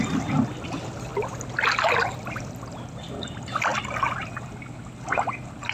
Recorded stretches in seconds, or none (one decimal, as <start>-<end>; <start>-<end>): 0.0-5.7